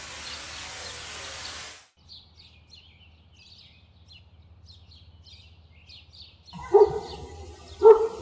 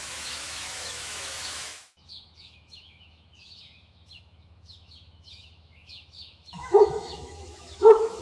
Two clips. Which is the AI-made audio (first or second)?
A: second